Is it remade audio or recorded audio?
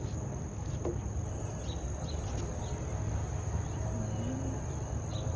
recorded